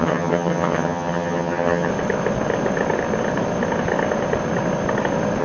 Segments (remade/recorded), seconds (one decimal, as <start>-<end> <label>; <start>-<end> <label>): 0.0-1.9 remade; 1.9-5.4 recorded